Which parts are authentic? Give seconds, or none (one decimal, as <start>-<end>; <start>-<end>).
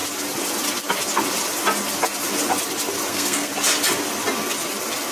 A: 0.0-3.1; 3.5-5.1